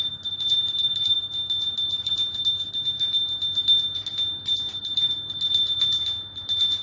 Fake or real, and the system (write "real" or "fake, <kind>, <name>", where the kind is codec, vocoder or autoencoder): real